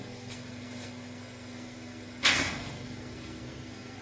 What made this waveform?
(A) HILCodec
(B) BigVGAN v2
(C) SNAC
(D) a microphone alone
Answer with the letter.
C